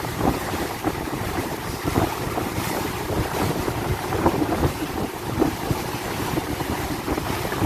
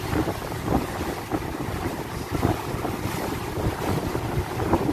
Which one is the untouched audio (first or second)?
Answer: second